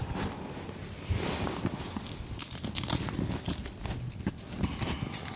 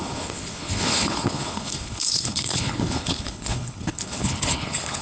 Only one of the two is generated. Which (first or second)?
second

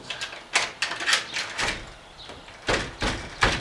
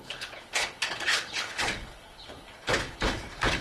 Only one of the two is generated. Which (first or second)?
second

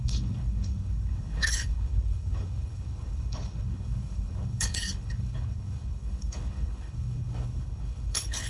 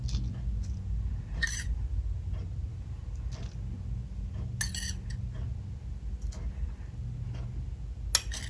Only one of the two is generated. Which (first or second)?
first